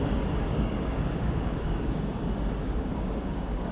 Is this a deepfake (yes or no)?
yes